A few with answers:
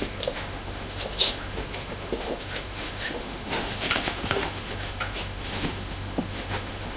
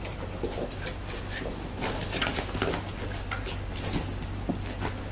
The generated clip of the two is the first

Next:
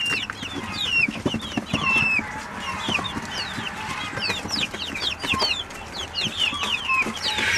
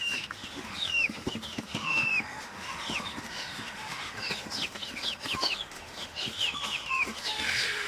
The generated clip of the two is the second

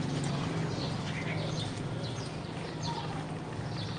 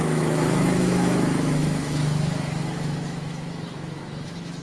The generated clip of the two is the second